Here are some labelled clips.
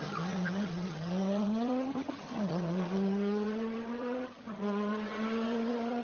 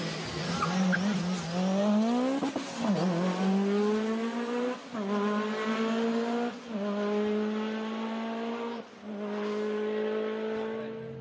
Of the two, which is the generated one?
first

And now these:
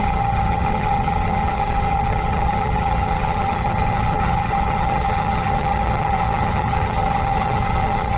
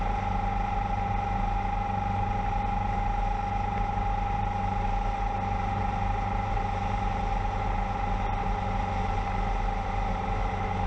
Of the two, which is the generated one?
first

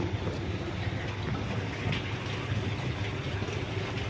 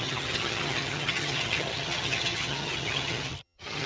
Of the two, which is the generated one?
second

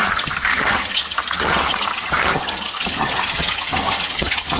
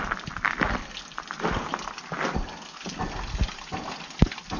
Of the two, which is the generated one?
first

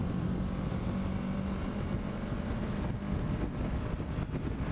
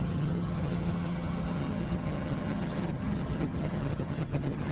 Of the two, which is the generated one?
second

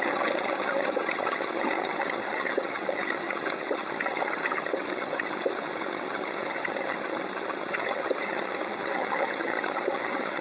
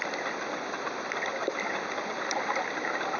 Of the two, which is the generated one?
first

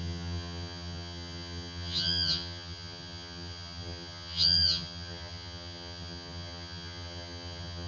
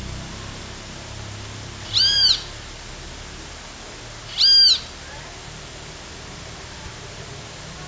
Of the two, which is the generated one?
first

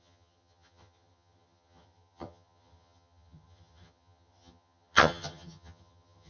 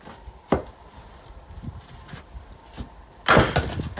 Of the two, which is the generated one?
first